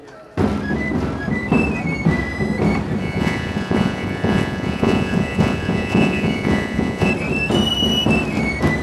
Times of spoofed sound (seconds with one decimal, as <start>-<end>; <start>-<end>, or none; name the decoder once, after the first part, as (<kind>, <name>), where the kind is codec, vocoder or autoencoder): 3.0-7.1 (vocoder, Vocos)